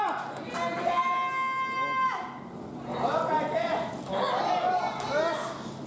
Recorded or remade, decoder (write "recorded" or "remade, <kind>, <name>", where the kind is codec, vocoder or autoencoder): recorded